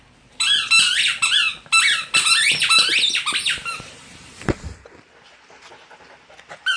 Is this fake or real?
real